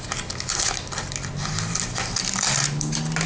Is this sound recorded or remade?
recorded